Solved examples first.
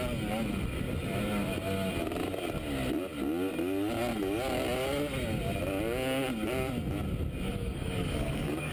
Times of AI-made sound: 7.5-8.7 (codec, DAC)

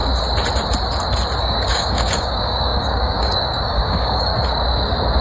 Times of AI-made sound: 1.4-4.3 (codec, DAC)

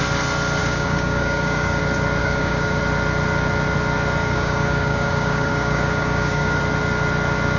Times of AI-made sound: 0.6-1.8 (codec, DAC); 2.2-2.8; 4.2-6.6

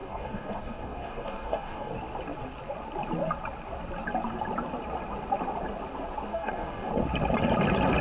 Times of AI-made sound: 0.0-1.9 (codec, DAC); 6.3-6.9

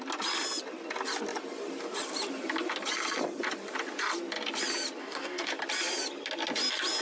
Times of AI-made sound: 5.0-5.5 (codec, DAC)

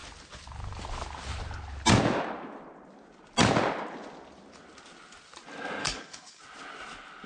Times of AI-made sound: 5.8-6.4 (codec, DAC)

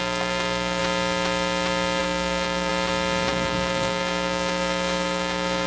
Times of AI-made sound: 0.0-0.8 (codec, DAC); 2.0-2.7; 3.3-5.7